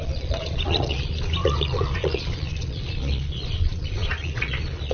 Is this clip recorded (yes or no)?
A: no